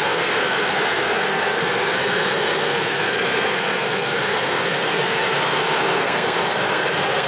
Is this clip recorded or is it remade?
remade